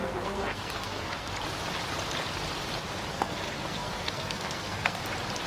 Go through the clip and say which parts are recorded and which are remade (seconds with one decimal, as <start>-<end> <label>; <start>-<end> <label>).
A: 0.0-1.3 remade; 1.3-3.1 recorded; 3.1-5.0 remade; 5.0-5.5 recorded